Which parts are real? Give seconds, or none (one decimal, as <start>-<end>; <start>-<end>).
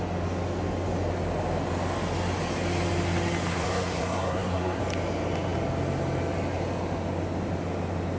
0.0-3.5; 4.8-8.2